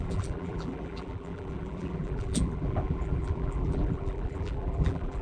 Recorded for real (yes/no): no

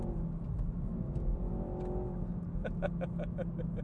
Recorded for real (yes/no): yes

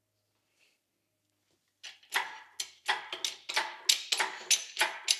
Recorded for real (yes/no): yes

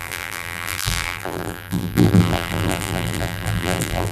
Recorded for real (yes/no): no